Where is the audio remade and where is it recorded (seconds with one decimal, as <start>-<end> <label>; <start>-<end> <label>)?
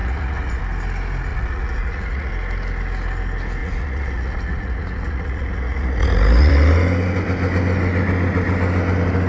0.0-0.6 remade; 0.6-1.3 recorded; 1.3-2.3 remade; 2.3-3.6 recorded; 3.6-6.5 remade; 6.5-9.3 recorded